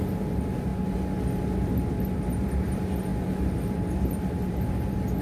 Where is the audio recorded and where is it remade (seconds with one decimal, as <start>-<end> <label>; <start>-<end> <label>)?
0.0-0.7 remade; 0.7-2.3 recorded; 2.3-5.2 remade